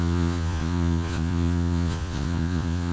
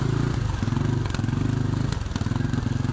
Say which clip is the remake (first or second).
first